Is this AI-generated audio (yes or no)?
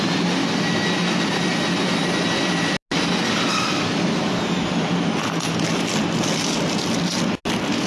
no